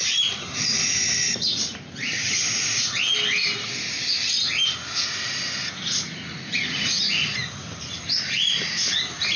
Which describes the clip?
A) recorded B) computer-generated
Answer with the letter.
A